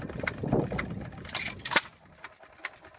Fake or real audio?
fake